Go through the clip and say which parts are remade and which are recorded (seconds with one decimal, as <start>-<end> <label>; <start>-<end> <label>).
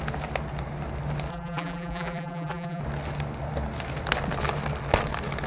0.0-1.3 recorded; 1.3-2.8 remade; 2.8-5.5 recorded